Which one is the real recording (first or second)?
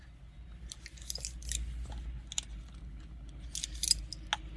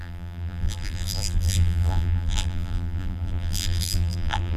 first